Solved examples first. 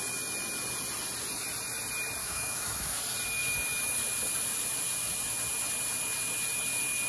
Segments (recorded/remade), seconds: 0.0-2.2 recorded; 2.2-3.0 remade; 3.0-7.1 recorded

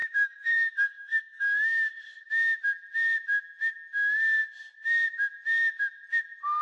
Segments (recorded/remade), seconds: 0.0-2.3 remade; 2.3-6.6 recorded

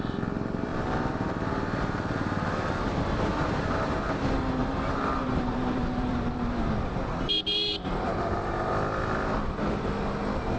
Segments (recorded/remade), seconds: 0.0-0.7 recorded; 0.7-3.0 remade; 3.0-4.6 recorded; 4.6-8.7 remade; 8.7-10.6 recorded

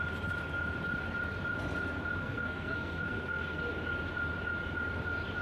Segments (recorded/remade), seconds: 0.0-2.2 recorded; 2.2-3.6 remade; 3.6-5.4 recorded

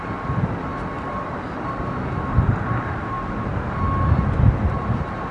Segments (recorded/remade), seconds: 0.0-0.7 recorded; 0.7-3.8 remade; 3.8-5.3 recorded

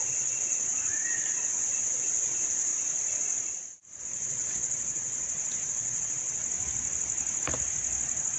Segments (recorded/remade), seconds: 0.0-0.7 remade; 0.7-1.6 recorded; 1.6-2.7 remade; 2.7-4.0 recorded; 4.0-6.4 remade; 6.4-8.4 recorded